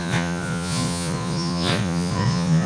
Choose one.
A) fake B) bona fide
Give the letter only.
A